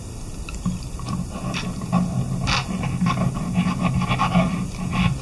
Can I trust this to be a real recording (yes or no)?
yes